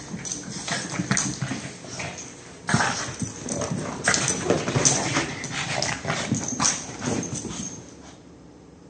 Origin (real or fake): real